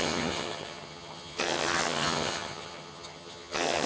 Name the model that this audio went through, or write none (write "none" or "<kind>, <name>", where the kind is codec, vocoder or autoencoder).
vocoder, HiFi-GAN